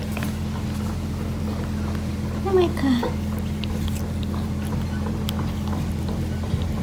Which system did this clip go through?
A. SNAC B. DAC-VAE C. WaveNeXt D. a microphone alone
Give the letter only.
D